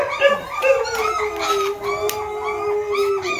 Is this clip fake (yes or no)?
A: no